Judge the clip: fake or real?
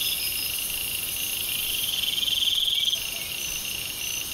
real